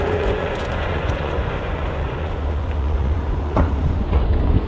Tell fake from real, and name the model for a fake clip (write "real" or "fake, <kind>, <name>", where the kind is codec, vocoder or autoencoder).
fake, vocoder, Vocos